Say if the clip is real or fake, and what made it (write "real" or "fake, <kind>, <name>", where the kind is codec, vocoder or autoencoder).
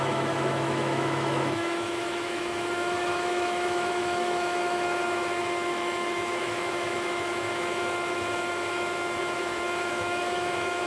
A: fake, autoencoder, DAC-VAE